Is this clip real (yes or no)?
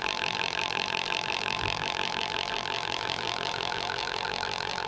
no